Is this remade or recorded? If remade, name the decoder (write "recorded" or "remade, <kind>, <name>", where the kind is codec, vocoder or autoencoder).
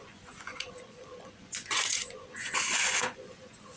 remade, vocoder, Vocos